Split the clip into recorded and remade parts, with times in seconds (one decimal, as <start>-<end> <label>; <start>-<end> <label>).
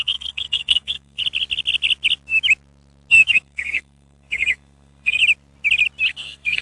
0.0-1.2 remade; 1.2-3.1 recorded; 3.1-5.2 remade; 5.2-6.1 recorded; 6.1-6.6 remade